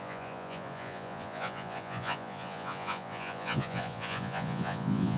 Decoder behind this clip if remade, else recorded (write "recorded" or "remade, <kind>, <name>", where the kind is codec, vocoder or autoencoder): remade, vocoder, Vocos